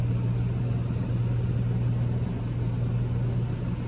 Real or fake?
real